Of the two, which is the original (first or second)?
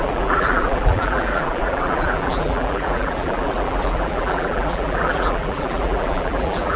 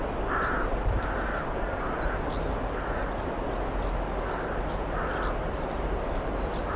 second